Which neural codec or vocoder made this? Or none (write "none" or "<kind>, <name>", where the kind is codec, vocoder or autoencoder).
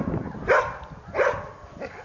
none